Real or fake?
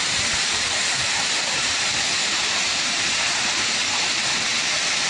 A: real